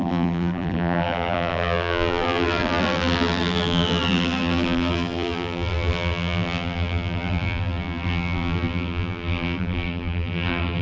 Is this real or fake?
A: fake